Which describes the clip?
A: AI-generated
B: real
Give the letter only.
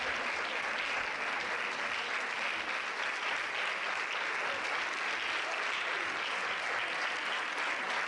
B